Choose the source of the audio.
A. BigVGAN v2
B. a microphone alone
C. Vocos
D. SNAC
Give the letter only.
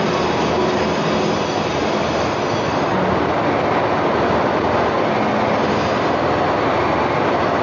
B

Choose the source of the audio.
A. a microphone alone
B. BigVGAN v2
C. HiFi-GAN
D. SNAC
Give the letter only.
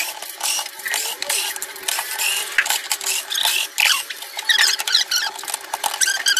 A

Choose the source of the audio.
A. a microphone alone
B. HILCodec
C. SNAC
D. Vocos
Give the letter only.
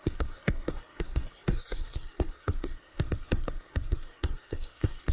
C